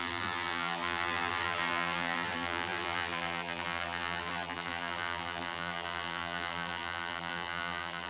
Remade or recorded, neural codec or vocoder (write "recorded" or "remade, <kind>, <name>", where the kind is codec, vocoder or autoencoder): remade, vocoder, BigVGAN v2